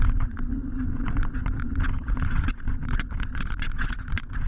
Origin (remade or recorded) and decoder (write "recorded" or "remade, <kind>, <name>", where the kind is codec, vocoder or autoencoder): remade, vocoder, Vocos